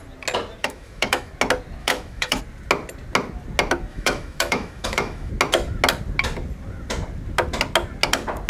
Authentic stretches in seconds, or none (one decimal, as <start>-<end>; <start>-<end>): 0.0-0.6; 1.3-1.8; 2.4-3.9; 5.3-8.5